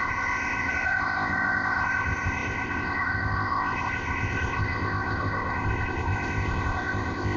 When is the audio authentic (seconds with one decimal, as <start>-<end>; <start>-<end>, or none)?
none